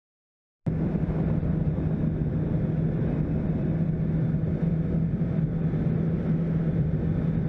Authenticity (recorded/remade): recorded